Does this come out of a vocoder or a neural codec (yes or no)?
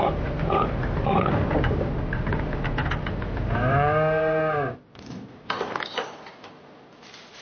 no